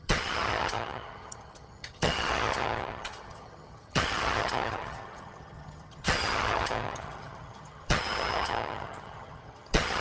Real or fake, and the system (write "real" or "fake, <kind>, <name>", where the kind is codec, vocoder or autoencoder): fake, vocoder, HiFi-GAN